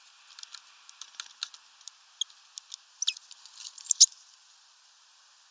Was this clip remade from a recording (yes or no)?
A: no